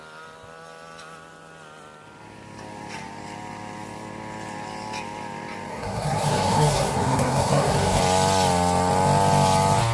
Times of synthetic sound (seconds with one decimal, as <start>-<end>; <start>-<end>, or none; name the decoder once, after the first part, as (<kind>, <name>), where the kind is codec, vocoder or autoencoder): 5.7-8.0 (codec, SNAC)

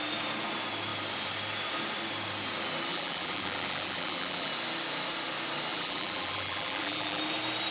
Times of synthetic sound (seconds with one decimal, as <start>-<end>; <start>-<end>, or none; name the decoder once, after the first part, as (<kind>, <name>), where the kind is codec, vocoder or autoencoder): 2.9-4.5 (vocoder, BigVGAN v2); 5.7-7.2

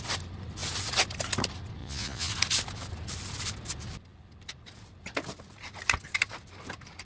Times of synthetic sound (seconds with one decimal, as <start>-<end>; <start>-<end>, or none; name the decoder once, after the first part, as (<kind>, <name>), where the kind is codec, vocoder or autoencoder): 1.8-2.3 (vocoder, Vocos)

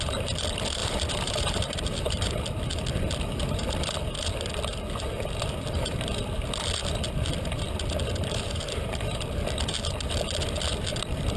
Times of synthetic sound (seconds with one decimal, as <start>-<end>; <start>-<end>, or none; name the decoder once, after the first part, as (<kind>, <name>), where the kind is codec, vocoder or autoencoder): 0.8-2.8 (vocoder, BigVGAN v2); 8.2-8.9